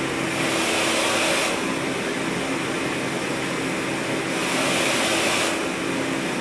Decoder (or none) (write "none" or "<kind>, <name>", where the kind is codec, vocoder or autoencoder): none